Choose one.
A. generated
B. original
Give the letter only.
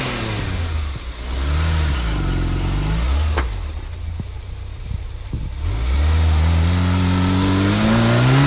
B